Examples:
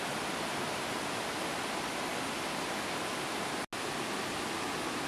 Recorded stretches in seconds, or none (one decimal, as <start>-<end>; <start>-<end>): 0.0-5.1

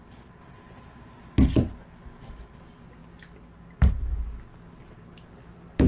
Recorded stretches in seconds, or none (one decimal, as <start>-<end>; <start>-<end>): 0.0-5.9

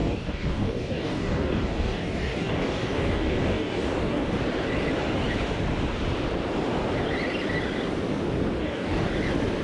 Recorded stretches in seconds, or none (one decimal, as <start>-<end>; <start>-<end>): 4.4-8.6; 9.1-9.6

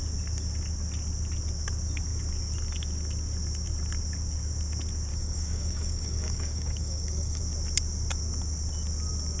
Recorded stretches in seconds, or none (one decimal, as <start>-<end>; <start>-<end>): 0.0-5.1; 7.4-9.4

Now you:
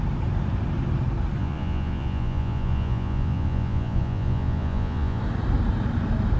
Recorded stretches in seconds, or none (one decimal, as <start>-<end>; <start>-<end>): 0.0-1.4; 5.2-6.4

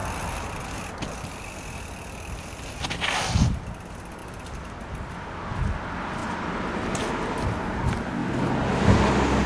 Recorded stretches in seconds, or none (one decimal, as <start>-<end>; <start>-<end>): 0.0-9.5